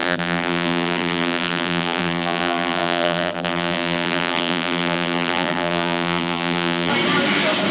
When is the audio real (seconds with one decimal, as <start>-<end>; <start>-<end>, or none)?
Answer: 6.9-7.7